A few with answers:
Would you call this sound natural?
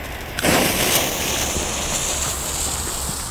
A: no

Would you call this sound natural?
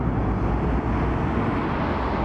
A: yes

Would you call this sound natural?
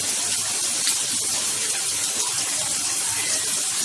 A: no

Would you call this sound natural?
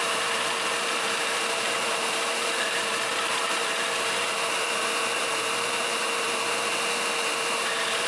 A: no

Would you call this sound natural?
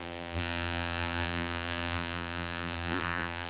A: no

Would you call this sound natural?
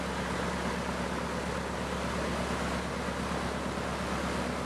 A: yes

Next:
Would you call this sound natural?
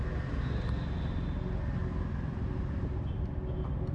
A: yes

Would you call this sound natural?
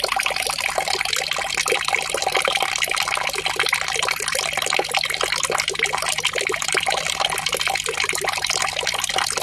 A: yes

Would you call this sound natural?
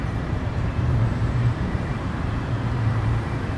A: no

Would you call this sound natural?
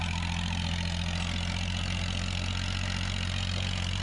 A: yes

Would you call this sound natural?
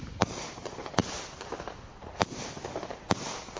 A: no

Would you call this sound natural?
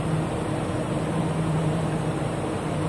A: no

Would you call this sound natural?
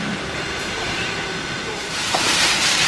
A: no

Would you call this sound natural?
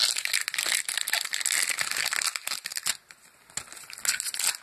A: yes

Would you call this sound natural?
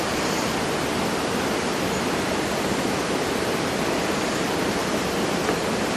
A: yes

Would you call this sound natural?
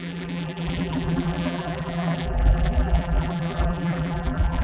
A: no